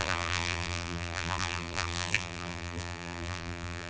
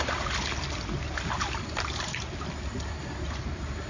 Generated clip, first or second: first